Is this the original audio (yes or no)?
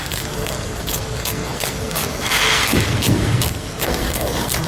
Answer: no